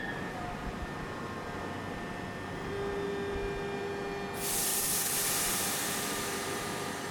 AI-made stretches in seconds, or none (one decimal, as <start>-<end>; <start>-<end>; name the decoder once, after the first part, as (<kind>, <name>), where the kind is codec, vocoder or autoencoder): 4.7-7.1 (vocoder, BigVGAN v2)